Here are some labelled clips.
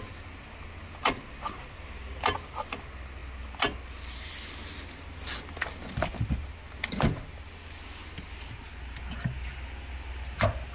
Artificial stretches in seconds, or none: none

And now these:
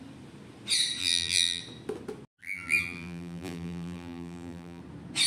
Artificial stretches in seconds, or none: 1.0-1.6; 2.4-4.8

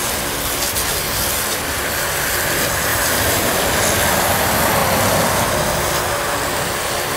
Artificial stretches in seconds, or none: 2.9-3.8